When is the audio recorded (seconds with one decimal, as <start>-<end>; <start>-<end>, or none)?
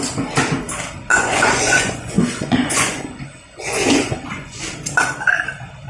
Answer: 0.0-1.1; 4.6-5.9